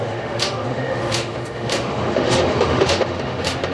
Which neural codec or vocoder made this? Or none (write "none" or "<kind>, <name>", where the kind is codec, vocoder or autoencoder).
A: autoencoder, DAC-VAE